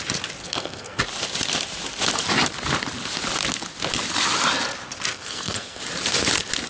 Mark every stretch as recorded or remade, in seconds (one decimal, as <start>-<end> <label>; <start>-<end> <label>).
0.0-0.4 recorded; 0.4-1.0 remade; 1.0-5.1 recorded; 5.1-5.8 remade; 5.8-6.7 recorded